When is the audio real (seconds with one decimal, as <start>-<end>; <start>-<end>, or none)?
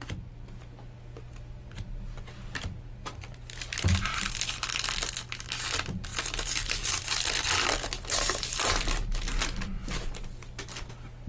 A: 0.0-4.1; 5.1-9.8; 10.9-11.3